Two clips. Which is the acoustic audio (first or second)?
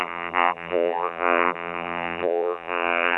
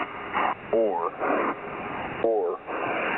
second